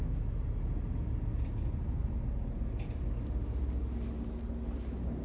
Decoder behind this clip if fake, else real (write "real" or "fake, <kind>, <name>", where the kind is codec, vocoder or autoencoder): real